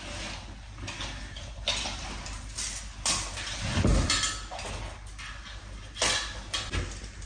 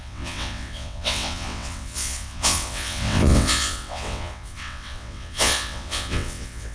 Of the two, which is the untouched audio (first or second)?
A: first